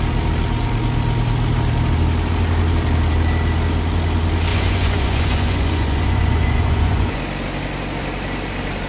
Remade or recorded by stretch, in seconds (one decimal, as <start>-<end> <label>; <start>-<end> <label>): 0.0-4.5 recorded; 4.5-7.2 remade; 7.2-8.9 recorded